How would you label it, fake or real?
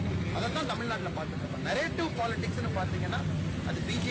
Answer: real